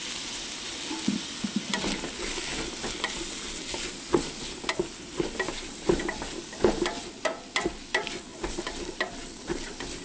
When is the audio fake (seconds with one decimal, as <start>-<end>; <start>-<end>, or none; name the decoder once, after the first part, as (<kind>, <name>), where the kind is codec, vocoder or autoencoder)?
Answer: none